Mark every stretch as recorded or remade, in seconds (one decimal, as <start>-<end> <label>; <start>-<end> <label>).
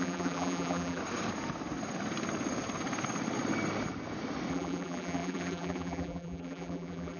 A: 0.0-1.0 remade; 1.0-4.5 recorded; 4.5-7.2 remade